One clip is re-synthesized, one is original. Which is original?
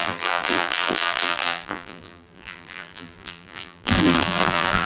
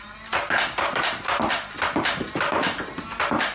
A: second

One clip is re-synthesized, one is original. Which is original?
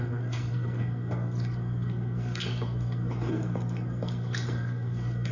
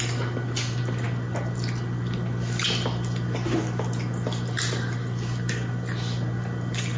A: second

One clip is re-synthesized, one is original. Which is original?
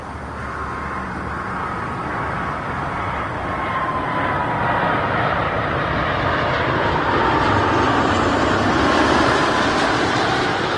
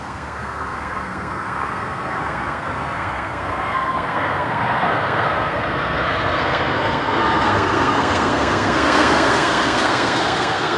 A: first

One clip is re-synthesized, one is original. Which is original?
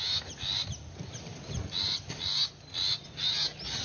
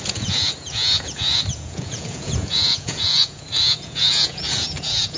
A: first